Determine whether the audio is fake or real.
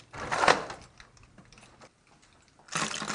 real